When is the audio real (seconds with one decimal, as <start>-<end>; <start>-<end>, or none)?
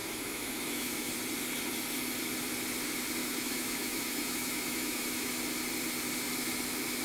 1.1-3.2; 5.3-7.0